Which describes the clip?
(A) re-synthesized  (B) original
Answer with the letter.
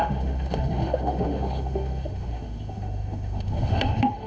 A